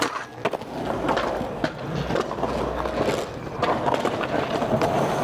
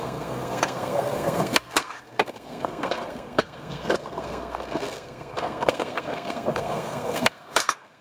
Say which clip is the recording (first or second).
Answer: first